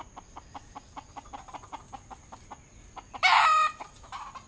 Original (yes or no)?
yes